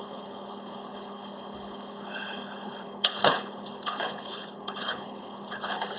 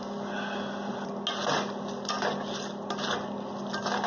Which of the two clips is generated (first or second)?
first